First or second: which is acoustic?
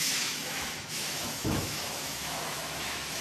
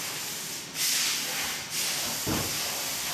second